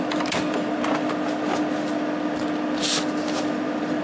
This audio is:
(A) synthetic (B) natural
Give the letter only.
B